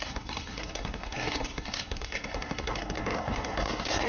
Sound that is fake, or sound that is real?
fake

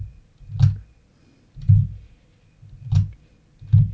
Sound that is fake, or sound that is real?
real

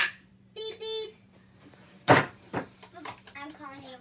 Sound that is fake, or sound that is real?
fake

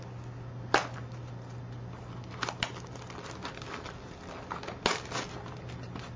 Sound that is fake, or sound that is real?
real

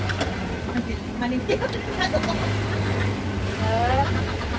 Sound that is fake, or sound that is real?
real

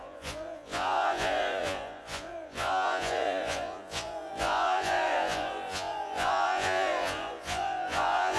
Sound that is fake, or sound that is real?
fake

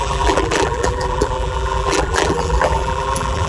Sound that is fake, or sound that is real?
fake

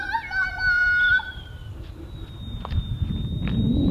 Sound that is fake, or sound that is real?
real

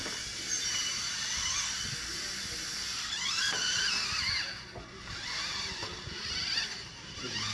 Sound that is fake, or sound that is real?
real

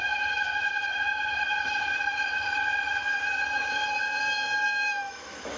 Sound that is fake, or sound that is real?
fake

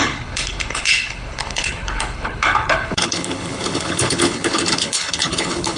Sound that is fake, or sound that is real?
fake